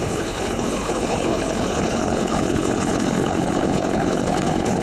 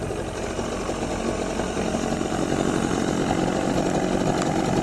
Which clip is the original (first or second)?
second